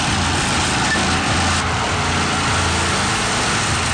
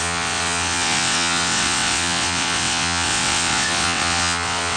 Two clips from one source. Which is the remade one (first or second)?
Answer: second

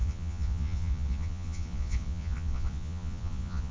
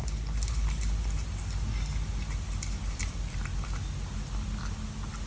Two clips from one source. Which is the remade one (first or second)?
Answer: first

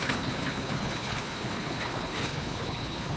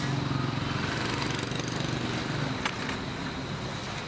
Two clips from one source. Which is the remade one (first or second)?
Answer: first